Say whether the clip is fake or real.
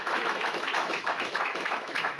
fake